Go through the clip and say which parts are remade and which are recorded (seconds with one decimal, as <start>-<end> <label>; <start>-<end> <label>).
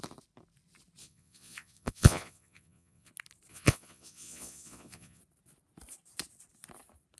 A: 0.0-1.0 recorded; 1.0-3.1 remade; 3.1-3.5 recorded; 3.5-5.2 remade; 5.2-7.2 recorded